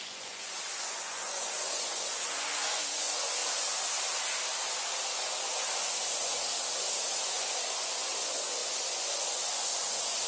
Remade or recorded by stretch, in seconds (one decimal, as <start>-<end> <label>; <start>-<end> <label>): 0.0-3.4 remade; 3.4-5.1 recorded; 5.1-6.3 remade; 6.3-7.2 recorded; 7.2-10.3 remade